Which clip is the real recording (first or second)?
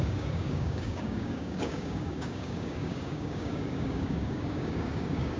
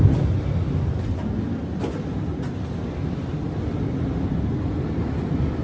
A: second